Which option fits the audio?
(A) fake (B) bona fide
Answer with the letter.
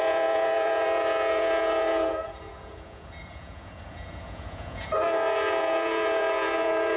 A